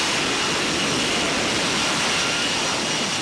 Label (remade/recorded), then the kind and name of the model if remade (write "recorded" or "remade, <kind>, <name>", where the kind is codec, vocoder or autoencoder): recorded